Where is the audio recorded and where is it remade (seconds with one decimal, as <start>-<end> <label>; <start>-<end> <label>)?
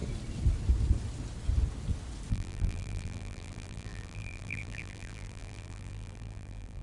0.0-2.3 recorded; 2.3-6.8 remade